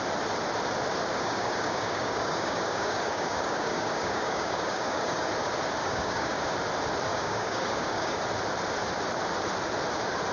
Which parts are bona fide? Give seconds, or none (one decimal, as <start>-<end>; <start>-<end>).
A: 0.0-1.1; 5.3-5.8; 6.4-7.1; 8.2-10.3